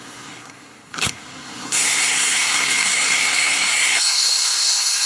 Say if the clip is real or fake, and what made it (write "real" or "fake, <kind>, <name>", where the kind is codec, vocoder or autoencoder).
fake, codec, SNAC